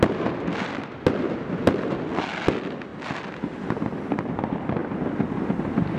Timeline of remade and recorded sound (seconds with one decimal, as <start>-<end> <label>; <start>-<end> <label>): 0.0-6.0 recorded